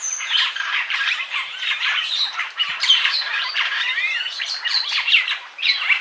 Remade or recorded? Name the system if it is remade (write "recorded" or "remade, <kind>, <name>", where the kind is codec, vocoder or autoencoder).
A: remade, vocoder, BigVGAN v2